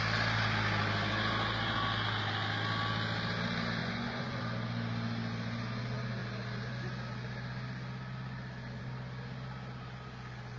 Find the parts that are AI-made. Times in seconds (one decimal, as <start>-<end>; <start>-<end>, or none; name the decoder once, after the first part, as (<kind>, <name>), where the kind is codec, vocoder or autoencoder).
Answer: 3.8-4.4 (vocoder, Vocos)